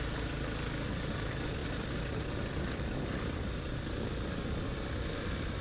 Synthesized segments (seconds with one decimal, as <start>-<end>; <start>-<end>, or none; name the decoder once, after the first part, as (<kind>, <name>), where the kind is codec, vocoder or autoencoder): none